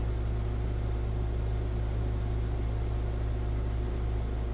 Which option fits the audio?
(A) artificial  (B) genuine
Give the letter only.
B